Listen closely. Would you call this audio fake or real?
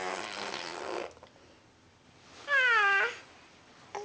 real